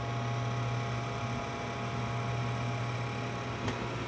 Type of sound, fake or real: real